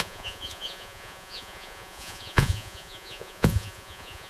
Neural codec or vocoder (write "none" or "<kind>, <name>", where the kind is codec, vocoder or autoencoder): vocoder, Vocos